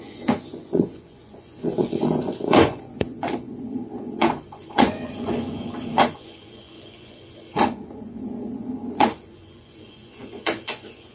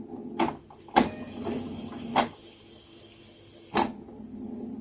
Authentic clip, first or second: second